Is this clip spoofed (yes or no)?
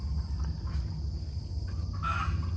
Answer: no